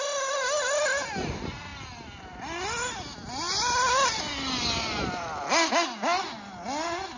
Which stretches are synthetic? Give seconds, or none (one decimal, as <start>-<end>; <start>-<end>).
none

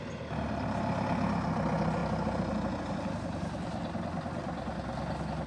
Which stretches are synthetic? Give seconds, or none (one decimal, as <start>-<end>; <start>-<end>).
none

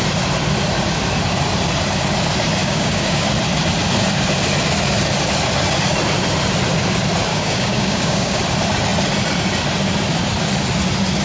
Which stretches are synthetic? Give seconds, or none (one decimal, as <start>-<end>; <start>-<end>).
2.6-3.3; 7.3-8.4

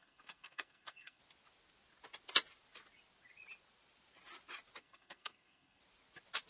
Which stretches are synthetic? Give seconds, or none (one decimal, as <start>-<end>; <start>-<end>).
0.0-1.2; 4.8-5.8

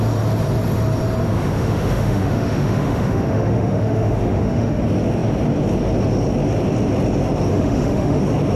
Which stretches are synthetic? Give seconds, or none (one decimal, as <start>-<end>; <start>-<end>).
1.2-4.8; 7.5-8.2

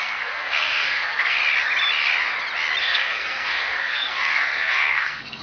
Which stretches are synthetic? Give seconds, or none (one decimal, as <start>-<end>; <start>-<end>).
0.0-1.4; 2.8-5.4